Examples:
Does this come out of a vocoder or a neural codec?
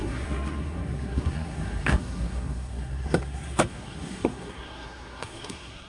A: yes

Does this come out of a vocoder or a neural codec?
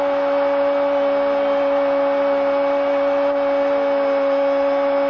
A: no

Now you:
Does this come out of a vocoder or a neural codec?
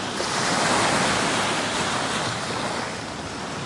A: no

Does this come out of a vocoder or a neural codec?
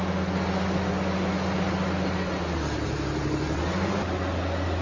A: no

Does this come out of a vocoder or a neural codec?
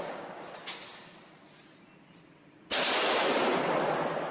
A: no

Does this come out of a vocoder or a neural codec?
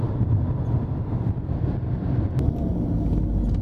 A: no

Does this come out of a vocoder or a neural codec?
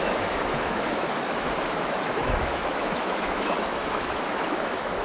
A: yes